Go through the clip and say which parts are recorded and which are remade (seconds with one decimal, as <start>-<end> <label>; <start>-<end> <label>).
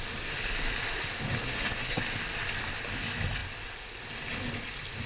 0.0-1.4 recorded; 1.4-2.0 remade; 2.0-5.1 recorded